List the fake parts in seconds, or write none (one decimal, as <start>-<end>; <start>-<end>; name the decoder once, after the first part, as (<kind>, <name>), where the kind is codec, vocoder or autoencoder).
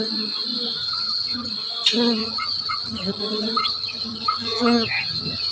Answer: 0.8-1.5 (vocoder, HiFi-GAN); 2.2-3.2; 3.6-5.5